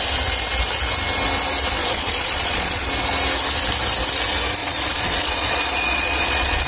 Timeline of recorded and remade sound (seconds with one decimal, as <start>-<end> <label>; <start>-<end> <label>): 0.0-1.8 recorded; 1.8-2.9 remade; 2.9-4.6 recorded; 4.6-6.7 remade